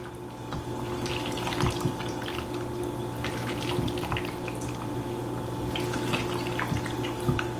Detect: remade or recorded recorded